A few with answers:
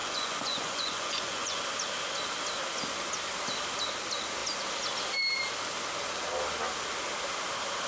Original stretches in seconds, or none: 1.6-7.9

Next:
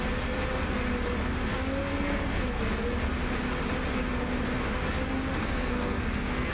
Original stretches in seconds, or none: 0.0-1.9; 2.6-5.4